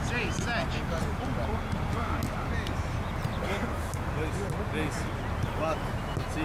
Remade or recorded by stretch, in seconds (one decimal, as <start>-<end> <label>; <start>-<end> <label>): 0.0-6.4 recorded